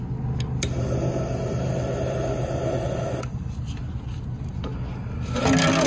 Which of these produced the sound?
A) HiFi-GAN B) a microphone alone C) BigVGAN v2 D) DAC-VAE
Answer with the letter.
B